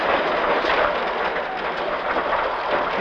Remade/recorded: recorded